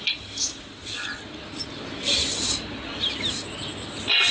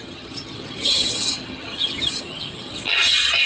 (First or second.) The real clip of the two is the first